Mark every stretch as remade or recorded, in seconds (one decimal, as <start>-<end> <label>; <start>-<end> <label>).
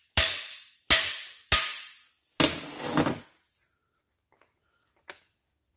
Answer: 0.0-5.8 recorded